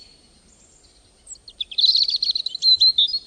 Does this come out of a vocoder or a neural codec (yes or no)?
no